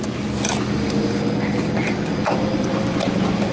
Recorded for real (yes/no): yes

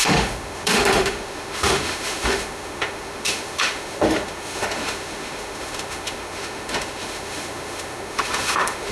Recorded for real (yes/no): no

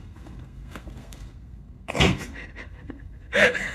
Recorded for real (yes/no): no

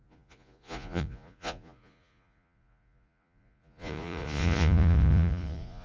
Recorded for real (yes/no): no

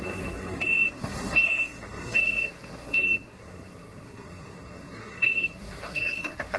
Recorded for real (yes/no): no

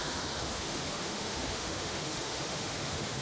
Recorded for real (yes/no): no